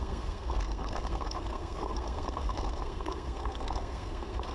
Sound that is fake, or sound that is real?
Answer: fake